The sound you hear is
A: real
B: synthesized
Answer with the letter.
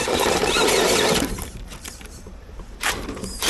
B